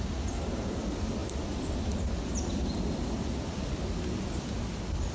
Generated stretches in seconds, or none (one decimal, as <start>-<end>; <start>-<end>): none